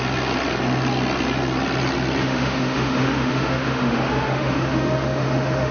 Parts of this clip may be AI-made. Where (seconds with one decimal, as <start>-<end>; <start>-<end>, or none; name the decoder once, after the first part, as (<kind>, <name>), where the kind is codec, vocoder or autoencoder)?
2.2-5.7 (autoencoder, DAC-VAE)